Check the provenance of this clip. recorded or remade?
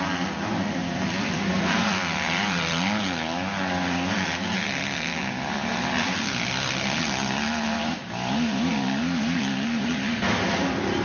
remade